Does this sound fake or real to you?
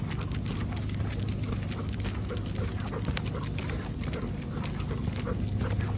real